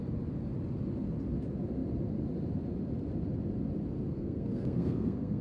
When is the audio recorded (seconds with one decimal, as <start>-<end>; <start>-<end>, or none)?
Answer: 0.0-4.1